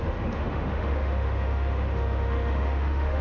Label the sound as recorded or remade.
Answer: remade